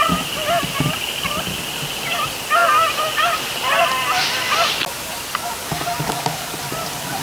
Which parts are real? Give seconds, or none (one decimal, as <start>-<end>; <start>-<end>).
0.0-5.6; 6.5-7.2